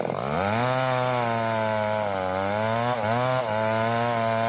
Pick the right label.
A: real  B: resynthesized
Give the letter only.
A